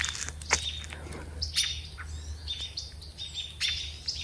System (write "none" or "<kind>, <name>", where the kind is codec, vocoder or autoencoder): none